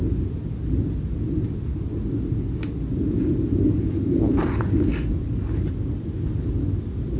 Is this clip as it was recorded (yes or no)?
yes